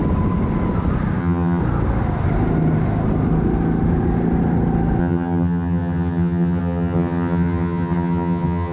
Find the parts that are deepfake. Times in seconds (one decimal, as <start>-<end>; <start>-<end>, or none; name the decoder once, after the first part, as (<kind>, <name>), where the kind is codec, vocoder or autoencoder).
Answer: 1.2-1.6 (vocoder, HiFi-GAN); 5.0-8.7